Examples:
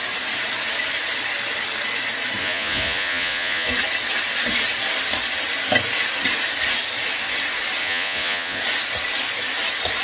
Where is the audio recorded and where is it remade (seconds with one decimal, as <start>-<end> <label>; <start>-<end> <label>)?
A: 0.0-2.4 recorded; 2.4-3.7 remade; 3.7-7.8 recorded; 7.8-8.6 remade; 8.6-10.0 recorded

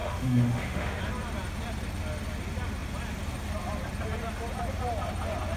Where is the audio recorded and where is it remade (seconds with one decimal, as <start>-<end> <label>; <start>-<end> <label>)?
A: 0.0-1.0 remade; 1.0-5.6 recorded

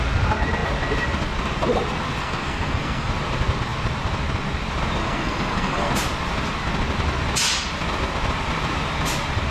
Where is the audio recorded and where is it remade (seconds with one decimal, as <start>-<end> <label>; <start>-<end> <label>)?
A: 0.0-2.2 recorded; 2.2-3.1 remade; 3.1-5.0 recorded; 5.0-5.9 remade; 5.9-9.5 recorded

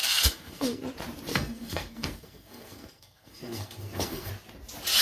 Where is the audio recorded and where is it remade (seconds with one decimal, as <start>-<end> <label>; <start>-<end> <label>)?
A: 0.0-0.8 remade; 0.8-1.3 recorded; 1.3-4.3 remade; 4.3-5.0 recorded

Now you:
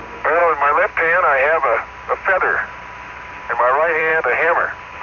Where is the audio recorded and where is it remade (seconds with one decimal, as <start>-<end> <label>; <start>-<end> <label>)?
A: 0.0-0.4 remade; 0.4-3.4 recorded; 3.4-4.1 remade; 4.1-5.0 recorded

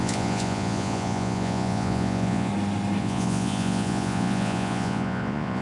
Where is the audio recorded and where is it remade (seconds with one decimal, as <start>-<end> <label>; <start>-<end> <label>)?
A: 0.0-2.5 remade; 2.5-3.0 recorded; 3.0-5.6 remade